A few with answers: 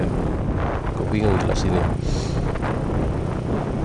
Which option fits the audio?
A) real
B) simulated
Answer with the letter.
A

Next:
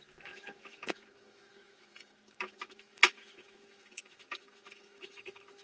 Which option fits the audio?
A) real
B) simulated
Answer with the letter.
B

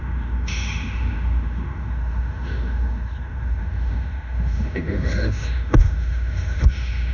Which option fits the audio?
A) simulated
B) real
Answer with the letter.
A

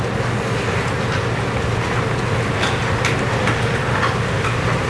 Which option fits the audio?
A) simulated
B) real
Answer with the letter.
B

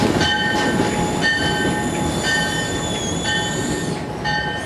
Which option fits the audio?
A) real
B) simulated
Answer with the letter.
A